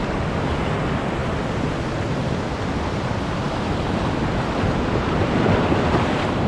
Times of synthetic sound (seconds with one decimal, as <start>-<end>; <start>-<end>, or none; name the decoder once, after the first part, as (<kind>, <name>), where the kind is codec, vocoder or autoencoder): 1.2-2.0 (vocoder, BigVGAN v2)